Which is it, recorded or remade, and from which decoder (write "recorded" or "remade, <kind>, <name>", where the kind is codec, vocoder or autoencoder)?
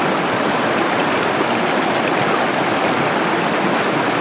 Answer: recorded